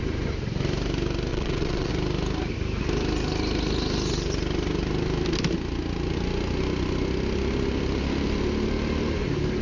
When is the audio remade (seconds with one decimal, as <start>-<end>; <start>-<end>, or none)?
1.3-1.9